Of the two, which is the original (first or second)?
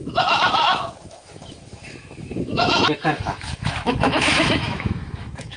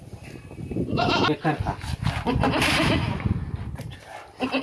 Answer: second